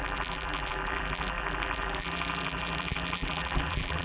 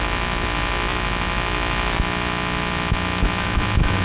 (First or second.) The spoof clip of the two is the first